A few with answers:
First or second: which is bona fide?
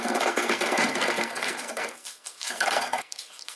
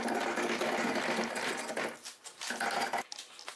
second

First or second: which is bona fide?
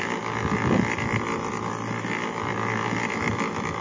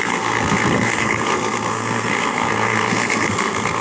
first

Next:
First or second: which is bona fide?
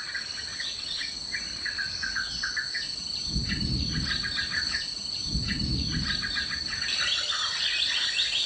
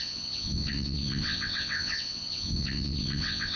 first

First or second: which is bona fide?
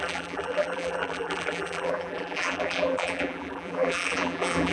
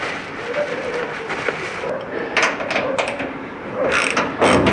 second